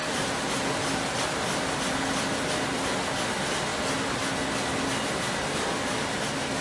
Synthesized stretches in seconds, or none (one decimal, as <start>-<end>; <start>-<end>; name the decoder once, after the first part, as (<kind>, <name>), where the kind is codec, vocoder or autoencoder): none